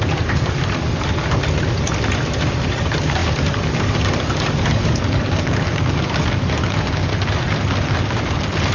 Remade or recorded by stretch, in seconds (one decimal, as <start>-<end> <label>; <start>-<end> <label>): 0.0-1.4 remade; 1.4-2.8 recorded; 2.8-7.1 remade; 7.1-8.7 recorded